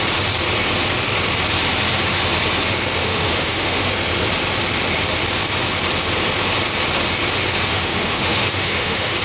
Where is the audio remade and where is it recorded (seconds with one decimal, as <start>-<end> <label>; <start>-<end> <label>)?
0.0-3.0 recorded; 3.0-3.9 remade; 3.9-7.7 recorded; 7.7-9.2 remade